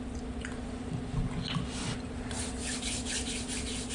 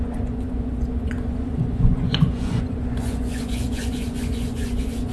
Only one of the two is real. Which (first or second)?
first